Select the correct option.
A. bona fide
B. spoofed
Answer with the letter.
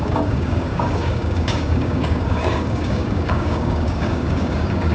B